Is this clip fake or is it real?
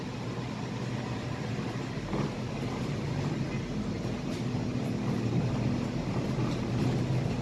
real